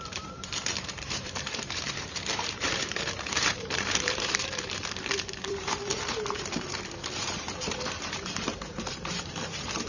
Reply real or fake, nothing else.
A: fake